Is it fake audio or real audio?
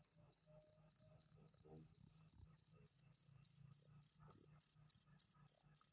real